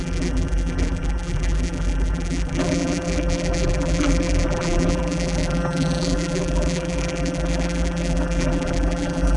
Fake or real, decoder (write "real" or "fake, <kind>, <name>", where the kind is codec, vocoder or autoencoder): fake, vocoder, BigVGAN v2